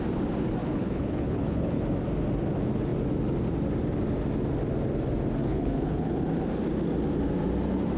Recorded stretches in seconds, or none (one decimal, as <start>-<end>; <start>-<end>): 0.0-0.6; 1.8-5.4; 6.2-8.0

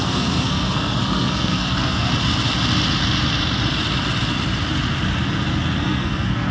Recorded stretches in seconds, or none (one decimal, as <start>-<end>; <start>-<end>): 2.1-5.8

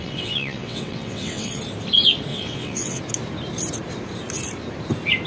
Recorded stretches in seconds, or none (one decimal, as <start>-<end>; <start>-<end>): 1.6-2.3; 3.0-5.3

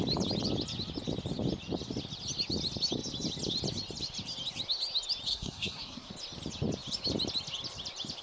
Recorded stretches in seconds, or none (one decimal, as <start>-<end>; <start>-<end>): 0.0-5.3; 6.1-8.2

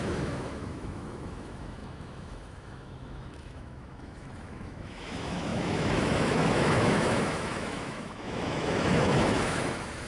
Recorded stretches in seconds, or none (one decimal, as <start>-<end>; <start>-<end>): none

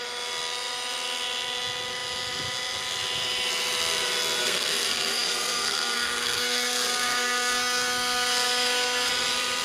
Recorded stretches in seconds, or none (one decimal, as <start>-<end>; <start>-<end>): 0.0-4.4; 9.1-9.6

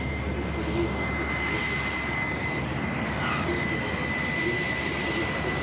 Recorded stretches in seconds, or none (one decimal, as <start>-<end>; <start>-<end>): 0.0-5.6